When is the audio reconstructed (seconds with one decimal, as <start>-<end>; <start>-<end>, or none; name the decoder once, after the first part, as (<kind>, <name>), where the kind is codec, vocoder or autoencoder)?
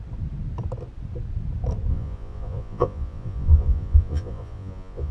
1.9-5.1 (vocoder, Vocos)